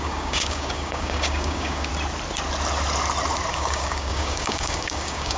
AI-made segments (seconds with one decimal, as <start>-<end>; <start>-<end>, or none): 0.0-1.9; 3.5-5.4